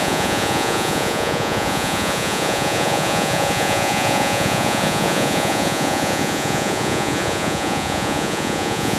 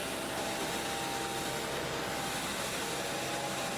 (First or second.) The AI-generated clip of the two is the first